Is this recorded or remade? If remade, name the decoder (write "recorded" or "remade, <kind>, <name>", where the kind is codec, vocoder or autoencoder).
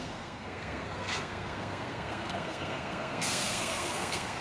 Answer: remade, codec, SNAC